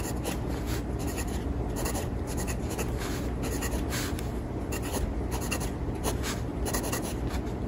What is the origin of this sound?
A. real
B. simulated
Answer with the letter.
A